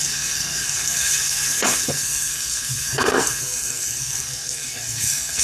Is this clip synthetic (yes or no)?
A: yes